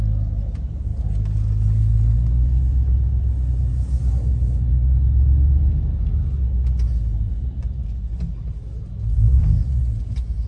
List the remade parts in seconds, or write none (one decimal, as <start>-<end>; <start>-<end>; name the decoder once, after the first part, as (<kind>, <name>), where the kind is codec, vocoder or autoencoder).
9.8-10.5 (vocoder, Vocos)

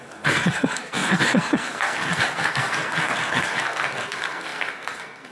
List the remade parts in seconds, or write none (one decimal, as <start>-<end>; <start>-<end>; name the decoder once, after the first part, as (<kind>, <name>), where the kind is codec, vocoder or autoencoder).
0.0-5.3 (codec, SNAC)

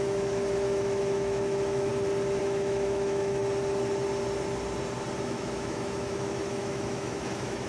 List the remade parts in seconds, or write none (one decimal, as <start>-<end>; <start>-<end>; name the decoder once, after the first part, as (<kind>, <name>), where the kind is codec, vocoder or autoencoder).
0.0-1.9 (autoencoder, DAC-VAE); 2.4-3.4; 5.2-7.7

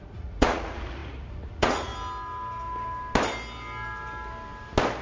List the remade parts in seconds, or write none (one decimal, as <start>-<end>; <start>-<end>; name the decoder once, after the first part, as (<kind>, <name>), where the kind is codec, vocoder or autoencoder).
0.0-1.9 (vocoder, Vocos)

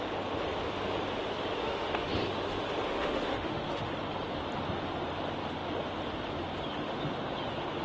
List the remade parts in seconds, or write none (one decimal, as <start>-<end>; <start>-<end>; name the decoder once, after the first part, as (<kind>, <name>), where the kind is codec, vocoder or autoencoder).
1.6-2.1 (autoencoder, DAC-VAE); 2.9-3.9

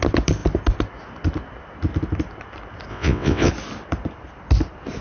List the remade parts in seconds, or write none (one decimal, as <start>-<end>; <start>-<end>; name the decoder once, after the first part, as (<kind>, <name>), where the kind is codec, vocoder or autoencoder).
2.9-3.5 (vocoder, WaveNeXt)

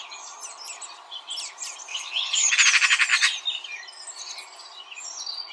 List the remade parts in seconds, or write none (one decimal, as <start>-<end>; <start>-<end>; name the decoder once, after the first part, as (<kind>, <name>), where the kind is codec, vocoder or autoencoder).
1.9-2.5 (codec, HILCodec)

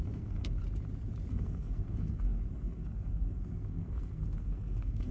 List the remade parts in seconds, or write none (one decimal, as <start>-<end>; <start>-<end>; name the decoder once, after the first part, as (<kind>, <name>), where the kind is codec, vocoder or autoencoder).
0.0-0.6 (codec, SNAC); 1.3-5.1